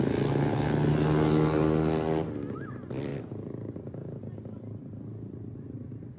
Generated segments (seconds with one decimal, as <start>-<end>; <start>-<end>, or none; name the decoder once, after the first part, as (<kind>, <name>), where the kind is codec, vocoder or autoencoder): none